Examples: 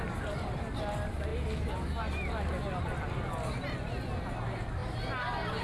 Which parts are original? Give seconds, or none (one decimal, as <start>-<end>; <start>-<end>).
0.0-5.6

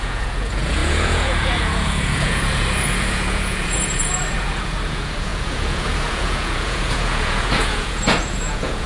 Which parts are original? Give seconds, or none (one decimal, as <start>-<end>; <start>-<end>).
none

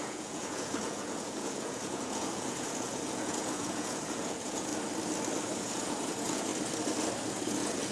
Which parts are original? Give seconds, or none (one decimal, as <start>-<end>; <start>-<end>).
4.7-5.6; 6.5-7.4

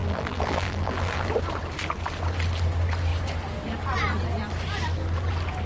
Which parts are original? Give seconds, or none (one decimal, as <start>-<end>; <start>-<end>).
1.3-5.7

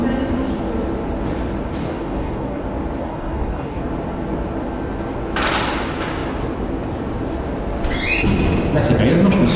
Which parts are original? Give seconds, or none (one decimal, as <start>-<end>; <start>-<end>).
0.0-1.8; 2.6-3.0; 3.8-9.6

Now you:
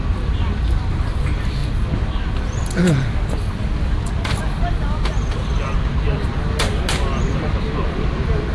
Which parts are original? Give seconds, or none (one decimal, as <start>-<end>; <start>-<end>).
0.0-8.5

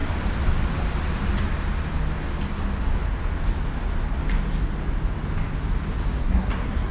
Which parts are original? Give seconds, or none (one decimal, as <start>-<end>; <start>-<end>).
0.0-6.2

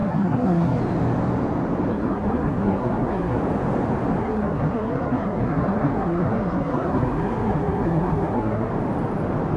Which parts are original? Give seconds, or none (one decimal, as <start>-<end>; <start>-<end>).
0.8-1.9; 3.4-4.2; 8.7-9.6